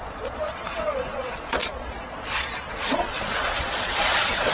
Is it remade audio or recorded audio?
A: remade